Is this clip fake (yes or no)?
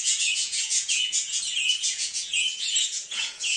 yes